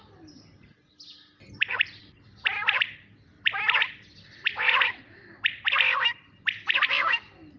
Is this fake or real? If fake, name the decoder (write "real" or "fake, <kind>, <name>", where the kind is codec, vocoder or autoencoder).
fake, vocoder, BigVGAN v2